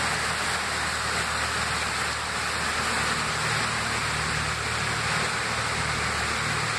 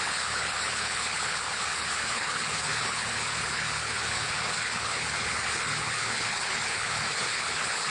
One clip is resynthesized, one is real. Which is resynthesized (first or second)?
second